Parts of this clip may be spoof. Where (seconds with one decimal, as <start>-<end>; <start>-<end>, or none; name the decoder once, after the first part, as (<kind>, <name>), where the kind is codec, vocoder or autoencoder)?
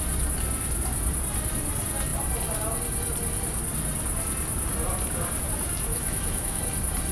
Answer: 5.9-6.6 (autoencoder, DAC-VAE)